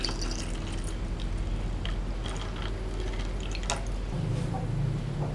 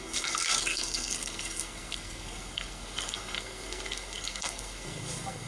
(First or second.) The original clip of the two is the first